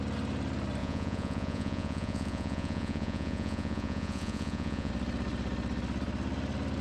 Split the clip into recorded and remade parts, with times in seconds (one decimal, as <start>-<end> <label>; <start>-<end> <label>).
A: 0.0-0.8 recorded; 0.8-4.9 remade; 4.9-6.8 recorded